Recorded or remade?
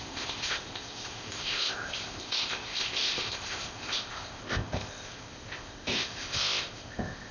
remade